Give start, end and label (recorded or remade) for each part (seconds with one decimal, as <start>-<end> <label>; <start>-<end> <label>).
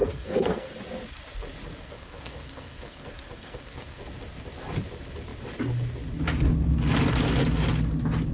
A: 0.0-0.7 remade; 0.7-1.8 recorded; 1.8-4.0 remade; 4.0-8.3 recorded